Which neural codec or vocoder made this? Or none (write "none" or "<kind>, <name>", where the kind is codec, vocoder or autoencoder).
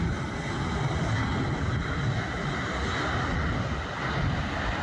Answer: none